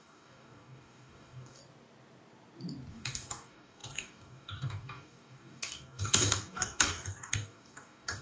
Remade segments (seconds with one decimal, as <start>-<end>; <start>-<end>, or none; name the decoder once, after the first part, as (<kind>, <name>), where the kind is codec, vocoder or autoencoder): 0.0-1.6 (codec, DAC); 2.9-8.2